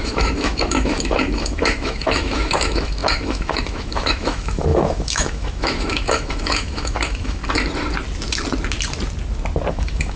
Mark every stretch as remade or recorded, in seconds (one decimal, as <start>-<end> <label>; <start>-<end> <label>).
0.0-7.4 remade; 7.4-9.7 recorded; 9.7-10.2 remade